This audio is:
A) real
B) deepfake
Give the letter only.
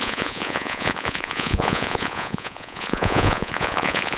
B